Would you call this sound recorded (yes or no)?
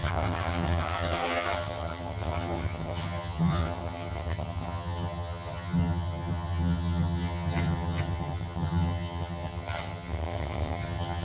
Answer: no